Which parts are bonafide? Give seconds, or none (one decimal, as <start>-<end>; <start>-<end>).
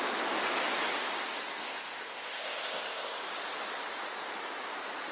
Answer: 0.0-1.6; 3.2-5.1